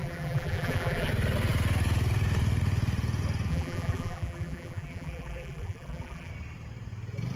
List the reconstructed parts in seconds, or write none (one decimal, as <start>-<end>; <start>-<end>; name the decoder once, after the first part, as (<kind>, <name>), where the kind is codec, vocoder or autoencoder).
0.0-1.1 (vocoder, BigVGAN v2); 3.5-6.3